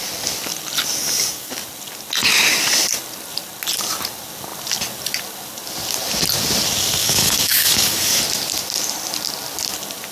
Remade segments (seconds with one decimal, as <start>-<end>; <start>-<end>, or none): 1.0-1.5; 7.0-8.2